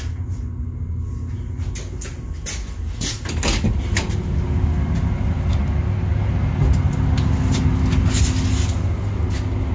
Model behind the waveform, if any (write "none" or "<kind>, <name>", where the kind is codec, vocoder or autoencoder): none